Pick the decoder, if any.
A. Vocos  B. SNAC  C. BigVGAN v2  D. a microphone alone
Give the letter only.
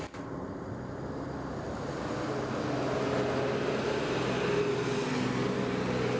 D